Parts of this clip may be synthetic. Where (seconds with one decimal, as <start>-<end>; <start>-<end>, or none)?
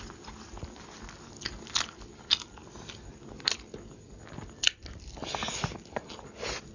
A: none